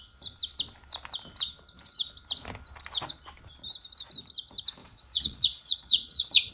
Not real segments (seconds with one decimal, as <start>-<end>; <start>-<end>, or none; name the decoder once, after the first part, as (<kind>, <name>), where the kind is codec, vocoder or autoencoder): 4.8-6.5 (vocoder, Vocos)